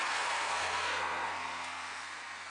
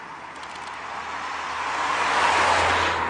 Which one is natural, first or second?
second